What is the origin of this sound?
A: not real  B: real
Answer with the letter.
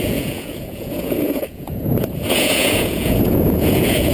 A